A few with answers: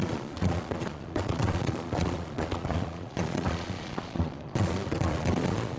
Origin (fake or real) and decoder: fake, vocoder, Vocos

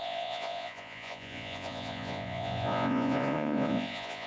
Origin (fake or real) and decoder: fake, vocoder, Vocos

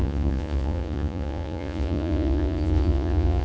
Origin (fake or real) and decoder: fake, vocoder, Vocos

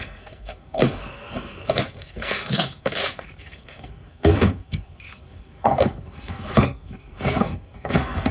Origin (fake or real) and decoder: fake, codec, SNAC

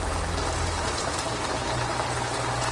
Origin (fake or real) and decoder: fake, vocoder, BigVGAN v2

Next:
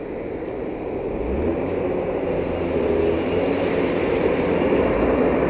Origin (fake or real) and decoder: real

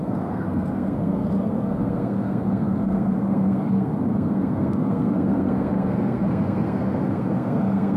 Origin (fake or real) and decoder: fake, codec, SNAC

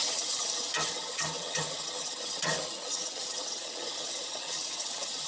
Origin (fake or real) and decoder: fake, vocoder, HiFi-GAN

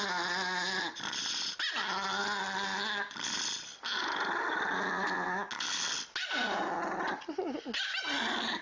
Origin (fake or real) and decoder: real